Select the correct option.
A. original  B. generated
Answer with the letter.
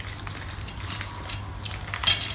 A